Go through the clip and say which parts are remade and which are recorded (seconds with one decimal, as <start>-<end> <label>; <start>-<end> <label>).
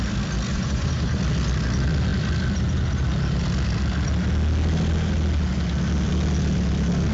0.0-0.5 recorded; 0.5-1.2 remade; 1.2-7.1 recorded